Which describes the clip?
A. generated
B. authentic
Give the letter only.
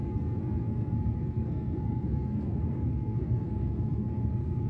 A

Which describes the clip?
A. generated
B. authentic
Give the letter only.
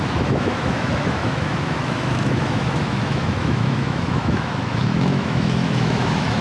A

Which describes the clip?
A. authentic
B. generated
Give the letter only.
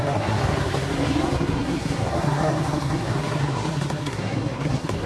B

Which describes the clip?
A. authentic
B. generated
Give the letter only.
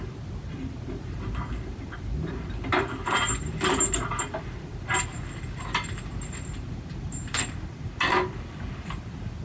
A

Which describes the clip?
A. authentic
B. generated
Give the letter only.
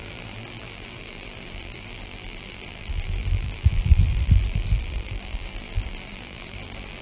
B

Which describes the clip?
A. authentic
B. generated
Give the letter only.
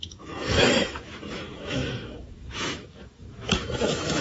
B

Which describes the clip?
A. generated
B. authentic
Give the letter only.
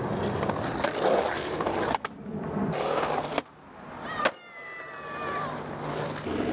B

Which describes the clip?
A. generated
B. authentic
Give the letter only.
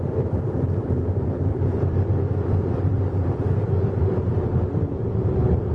A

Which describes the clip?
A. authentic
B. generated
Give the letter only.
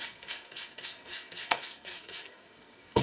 B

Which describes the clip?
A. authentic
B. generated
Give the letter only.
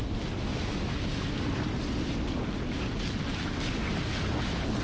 A